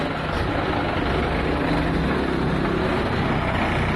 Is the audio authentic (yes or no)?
yes